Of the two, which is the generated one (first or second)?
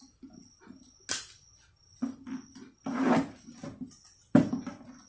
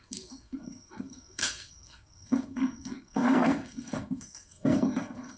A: second